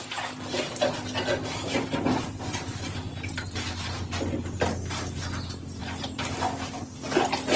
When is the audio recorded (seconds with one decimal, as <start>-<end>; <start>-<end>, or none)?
0.0-7.6